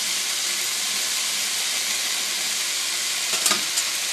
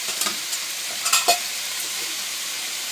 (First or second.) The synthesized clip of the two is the second